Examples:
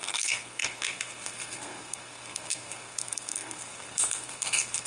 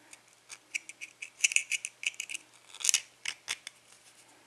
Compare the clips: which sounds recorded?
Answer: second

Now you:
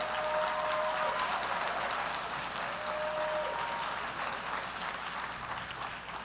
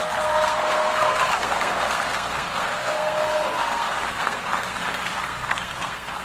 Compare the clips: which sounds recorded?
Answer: first